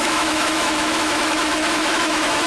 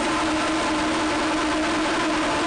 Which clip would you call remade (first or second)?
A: first